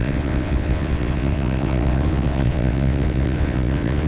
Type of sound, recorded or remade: remade